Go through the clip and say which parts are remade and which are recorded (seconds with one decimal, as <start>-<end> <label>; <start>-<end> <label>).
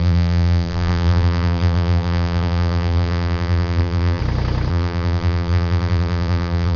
0.0-4.2 remade; 4.2-4.7 recorded; 4.7-6.8 remade